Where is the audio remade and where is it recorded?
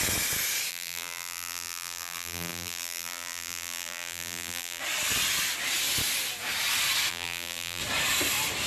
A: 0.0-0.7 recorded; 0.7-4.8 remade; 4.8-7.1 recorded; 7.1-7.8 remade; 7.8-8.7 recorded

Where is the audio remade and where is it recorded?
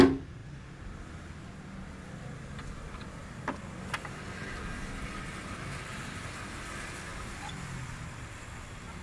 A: 0.0-0.4 recorded; 0.4-1.1 remade; 1.1-3.2 recorded; 3.2-6.4 remade; 6.4-7.1 recorded; 7.1-8.5 remade; 8.5-9.0 recorded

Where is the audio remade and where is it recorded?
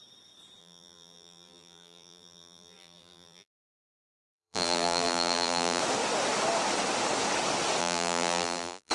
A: 0.0-0.6 recorded; 0.6-5.8 remade; 5.8-7.8 recorded; 7.8-8.9 remade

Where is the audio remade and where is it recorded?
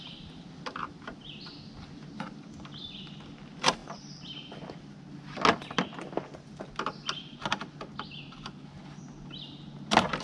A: 0.0-10.2 recorded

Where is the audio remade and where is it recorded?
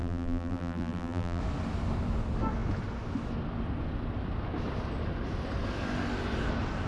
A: 0.0-1.4 remade; 1.4-6.9 recorded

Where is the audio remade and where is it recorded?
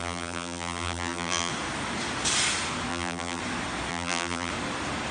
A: 0.0-1.5 remade; 1.5-2.9 recorded; 2.9-3.4 remade; 3.4-3.9 recorded; 3.9-4.5 remade; 4.5-5.1 recorded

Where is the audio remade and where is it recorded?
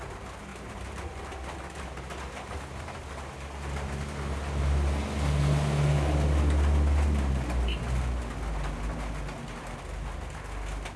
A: 0.0-0.5 recorded; 0.5-2.5 remade; 2.5-11.0 recorded